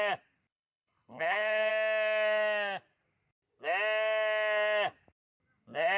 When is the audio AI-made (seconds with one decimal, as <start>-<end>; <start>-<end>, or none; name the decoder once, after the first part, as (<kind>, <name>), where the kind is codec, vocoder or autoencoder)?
0.5-1.7 (codec, HILCodec)